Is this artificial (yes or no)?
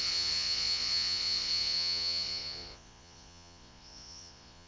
yes